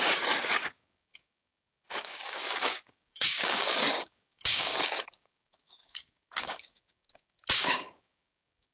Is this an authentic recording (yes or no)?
no